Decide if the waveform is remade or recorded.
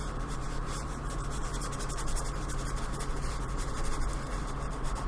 remade